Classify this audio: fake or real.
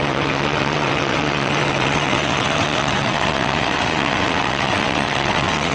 fake